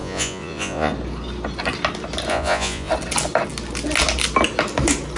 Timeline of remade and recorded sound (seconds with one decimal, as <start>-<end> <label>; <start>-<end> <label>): 0.0-0.9 remade; 0.9-2.3 recorded; 2.3-2.9 remade; 2.9-5.2 recorded